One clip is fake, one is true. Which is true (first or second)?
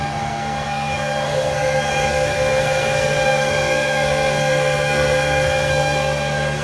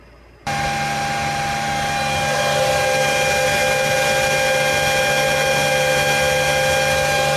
second